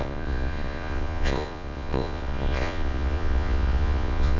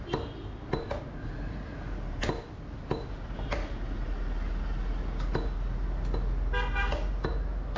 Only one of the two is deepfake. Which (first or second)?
first